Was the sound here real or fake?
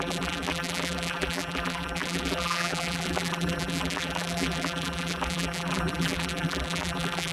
fake